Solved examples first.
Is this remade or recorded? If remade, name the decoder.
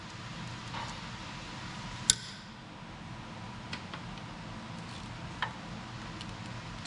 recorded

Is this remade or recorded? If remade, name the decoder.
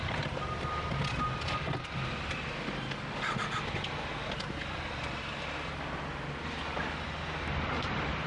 recorded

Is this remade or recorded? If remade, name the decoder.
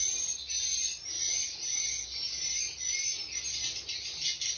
recorded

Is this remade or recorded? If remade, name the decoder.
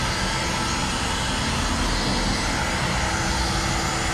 recorded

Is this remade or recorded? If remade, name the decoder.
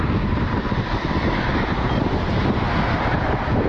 recorded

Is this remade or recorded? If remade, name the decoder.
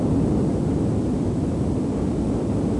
recorded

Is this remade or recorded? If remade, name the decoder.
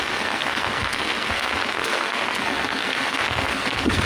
remade, codec, SNAC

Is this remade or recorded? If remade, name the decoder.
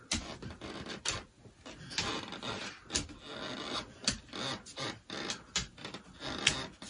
recorded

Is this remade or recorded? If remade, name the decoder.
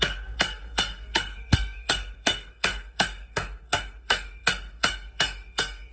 remade, codec, SNAC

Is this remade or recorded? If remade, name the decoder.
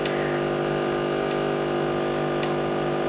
recorded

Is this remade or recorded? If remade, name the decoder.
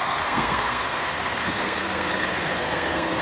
remade, codec, SNAC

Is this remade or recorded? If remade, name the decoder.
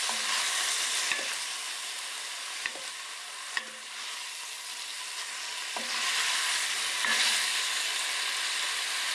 recorded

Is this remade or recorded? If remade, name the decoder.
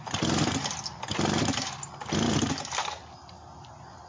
recorded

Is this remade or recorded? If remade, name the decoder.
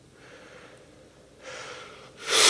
recorded